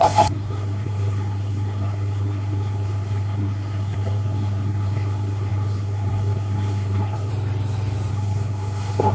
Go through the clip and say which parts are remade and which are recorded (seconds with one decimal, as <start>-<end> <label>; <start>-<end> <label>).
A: 0.0-7.3 remade; 7.3-8.1 recorded; 8.1-9.1 remade